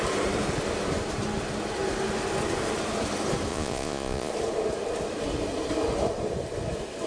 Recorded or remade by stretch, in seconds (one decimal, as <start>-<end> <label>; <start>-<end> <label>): 0.0-3.5 recorded; 3.5-4.3 remade; 4.3-7.1 recorded

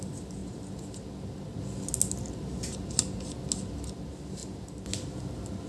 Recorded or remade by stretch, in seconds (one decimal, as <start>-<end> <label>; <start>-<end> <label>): 0.0-5.7 recorded

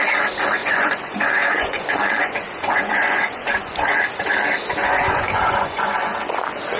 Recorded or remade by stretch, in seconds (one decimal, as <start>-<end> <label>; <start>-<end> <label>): 0.0-0.6 recorded; 0.6-4.0 remade; 4.0-4.8 recorded; 4.8-6.1 remade; 6.1-6.8 recorded

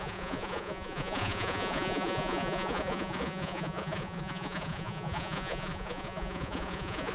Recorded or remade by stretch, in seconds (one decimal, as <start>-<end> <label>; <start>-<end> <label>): 0.0-7.1 remade

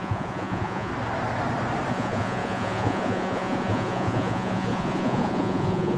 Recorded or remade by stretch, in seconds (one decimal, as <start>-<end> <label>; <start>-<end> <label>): 0.0-0.9 remade; 0.9-1.9 recorded; 1.9-6.0 remade

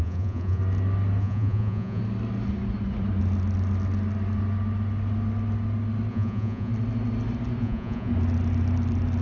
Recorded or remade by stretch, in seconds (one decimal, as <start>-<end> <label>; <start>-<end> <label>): 0.0-0.6 remade; 0.6-1.2 recorded; 1.2-2.0 remade; 2.0-6.1 recorded; 6.1-6.7 remade; 6.7-7.6 recorded; 7.6-8.1 remade; 8.1-9.2 recorded

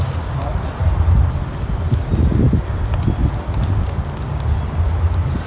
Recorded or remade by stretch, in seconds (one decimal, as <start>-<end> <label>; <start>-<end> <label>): 0.0-5.5 recorded

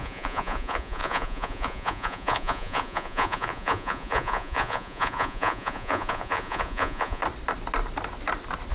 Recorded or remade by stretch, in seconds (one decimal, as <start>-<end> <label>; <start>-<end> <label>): 0.0-7.2 remade; 7.2-8.7 recorded